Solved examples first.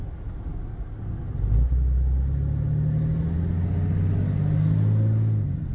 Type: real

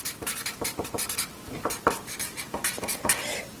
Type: real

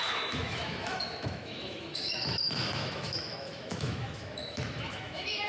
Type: fake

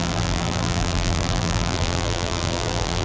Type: fake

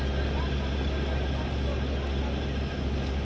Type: real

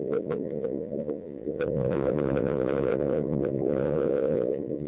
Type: fake